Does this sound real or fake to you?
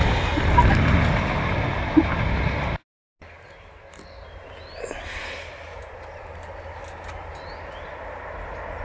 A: real